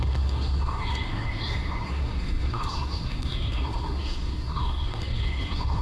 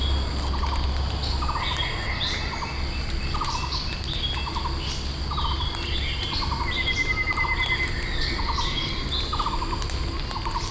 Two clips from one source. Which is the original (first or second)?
second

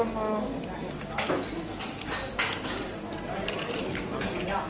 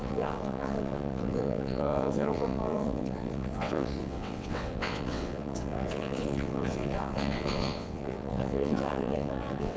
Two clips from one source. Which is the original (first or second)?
first